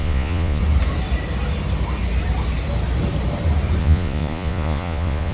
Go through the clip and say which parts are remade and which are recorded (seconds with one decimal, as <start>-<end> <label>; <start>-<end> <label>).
0.0-0.6 remade; 0.6-3.8 recorded; 3.8-5.3 remade